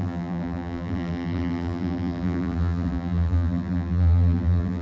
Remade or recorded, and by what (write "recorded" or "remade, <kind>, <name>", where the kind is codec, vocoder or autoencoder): remade, vocoder, BigVGAN v2